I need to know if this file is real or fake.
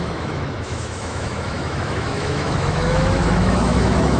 fake